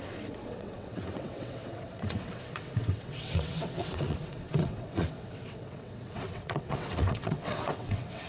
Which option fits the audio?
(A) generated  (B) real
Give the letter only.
A